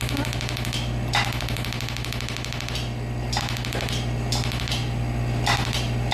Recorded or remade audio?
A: recorded